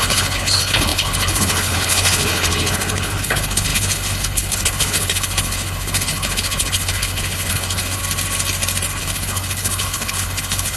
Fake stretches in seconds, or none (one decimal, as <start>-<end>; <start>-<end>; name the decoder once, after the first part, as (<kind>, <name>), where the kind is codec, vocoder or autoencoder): 0.0-8.0 (codec, HILCodec); 9.0-10.8